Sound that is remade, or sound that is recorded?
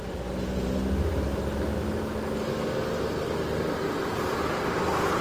recorded